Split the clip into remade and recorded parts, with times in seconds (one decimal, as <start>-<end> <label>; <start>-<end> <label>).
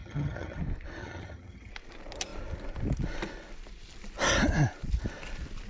0.0-0.6 remade; 0.6-1.0 recorded; 1.0-1.7 remade; 1.7-5.7 recorded